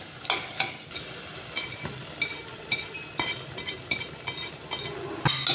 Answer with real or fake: real